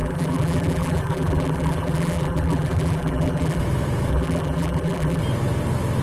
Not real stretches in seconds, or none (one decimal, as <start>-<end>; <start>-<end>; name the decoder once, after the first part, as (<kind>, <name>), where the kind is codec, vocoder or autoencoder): 0.0-3.6 (vocoder, BigVGAN v2); 4.1-5.2